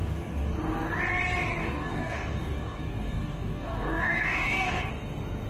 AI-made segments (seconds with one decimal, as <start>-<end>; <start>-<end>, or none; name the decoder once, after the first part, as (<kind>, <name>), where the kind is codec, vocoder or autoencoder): 0.0-0.5 (codec, DAC); 1.6-4.9